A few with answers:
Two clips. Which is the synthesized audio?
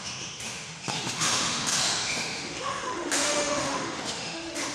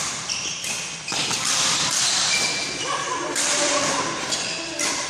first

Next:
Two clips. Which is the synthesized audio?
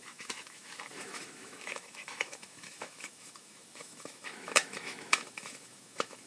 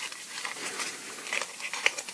first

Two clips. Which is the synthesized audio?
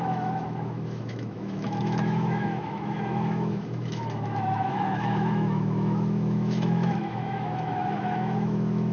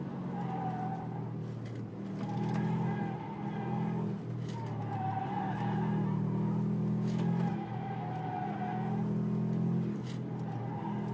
first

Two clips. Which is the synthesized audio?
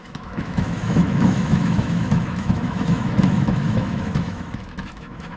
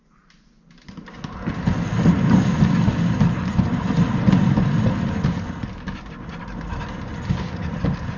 first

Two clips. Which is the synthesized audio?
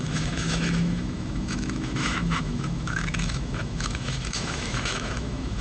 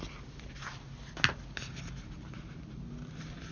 first